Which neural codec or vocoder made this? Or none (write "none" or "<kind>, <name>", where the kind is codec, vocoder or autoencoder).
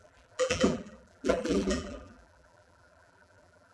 vocoder, BigVGAN v2